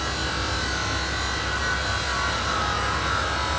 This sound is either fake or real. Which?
real